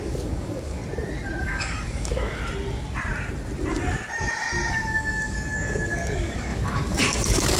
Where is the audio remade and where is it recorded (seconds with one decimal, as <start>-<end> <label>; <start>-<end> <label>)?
0.0-0.8 remade; 0.8-1.4 recorded; 1.4-2.4 remade; 2.4-4.7 recorded; 4.7-7.6 remade